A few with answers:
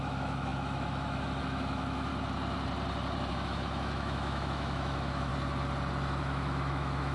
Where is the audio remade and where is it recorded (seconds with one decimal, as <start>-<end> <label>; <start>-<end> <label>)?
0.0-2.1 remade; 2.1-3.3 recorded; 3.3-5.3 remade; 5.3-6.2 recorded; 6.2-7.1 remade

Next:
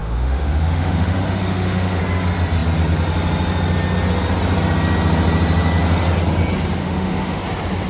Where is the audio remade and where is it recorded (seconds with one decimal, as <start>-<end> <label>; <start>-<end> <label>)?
0.0-2.0 remade; 2.0-6.8 recorded; 6.8-7.4 remade; 7.4-7.9 recorded

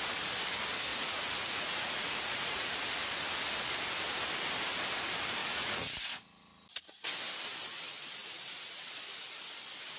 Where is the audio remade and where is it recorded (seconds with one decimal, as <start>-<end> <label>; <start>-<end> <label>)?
0.0-0.9 recorded; 0.9-2.7 remade; 2.7-5.4 recorded; 5.4-6.1 remade; 6.1-10.0 recorded